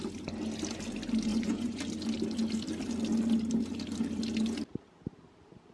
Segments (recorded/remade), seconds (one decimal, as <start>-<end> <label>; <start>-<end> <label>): 0.0-1.3 recorded; 1.3-1.8 remade; 1.8-5.7 recorded